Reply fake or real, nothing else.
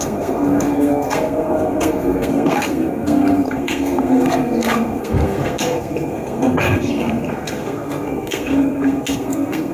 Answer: fake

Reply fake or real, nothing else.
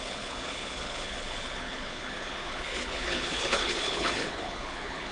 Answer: fake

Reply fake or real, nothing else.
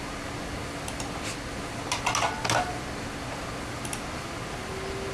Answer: real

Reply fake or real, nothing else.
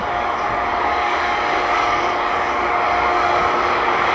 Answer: fake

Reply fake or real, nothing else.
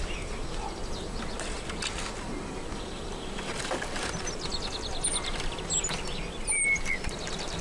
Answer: real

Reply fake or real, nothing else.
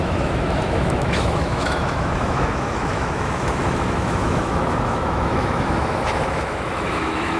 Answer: fake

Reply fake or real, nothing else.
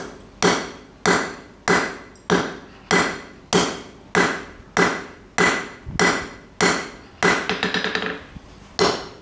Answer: real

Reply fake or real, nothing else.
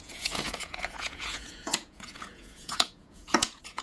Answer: fake